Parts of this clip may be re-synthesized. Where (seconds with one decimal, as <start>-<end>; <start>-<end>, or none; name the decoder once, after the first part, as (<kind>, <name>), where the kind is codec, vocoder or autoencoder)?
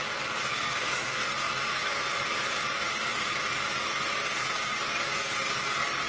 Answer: 0.5-1.3 (codec, SNAC)